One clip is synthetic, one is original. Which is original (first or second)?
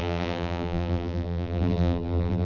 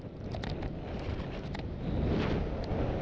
second